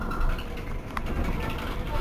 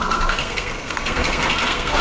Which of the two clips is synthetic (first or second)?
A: second